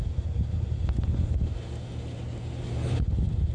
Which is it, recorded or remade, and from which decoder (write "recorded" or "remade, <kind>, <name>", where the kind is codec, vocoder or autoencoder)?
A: recorded